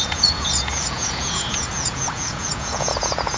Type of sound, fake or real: fake